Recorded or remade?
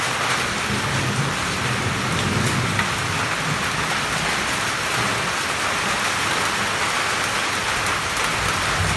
recorded